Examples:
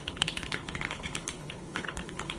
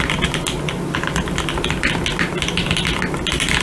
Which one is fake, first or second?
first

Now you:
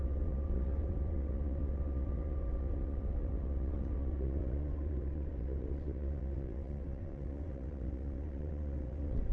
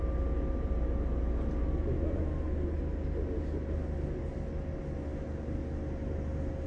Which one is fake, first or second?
first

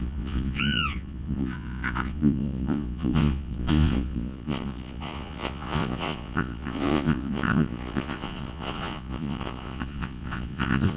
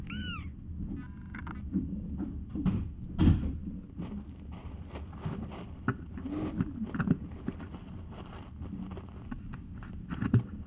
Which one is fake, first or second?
first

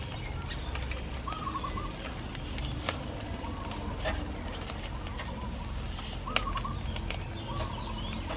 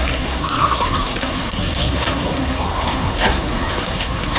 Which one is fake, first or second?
second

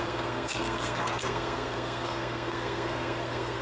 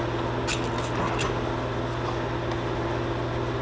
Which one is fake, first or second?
first